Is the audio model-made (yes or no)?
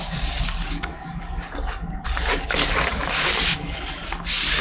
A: yes